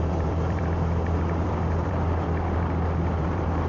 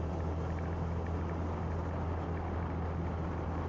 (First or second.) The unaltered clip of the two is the second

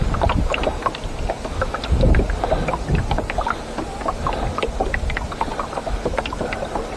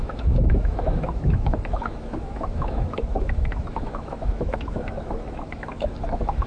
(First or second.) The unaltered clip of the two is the first